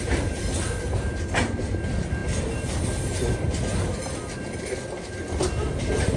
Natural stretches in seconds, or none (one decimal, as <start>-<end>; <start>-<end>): 0.0-6.2